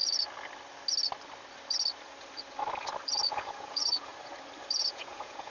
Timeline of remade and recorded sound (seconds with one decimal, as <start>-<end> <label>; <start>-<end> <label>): 0.0-3.3 recorded; 3.3-4.1 remade; 4.1-4.8 recorded; 4.8-5.5 remade